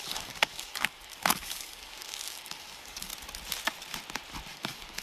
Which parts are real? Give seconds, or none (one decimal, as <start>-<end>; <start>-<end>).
3.1-4.5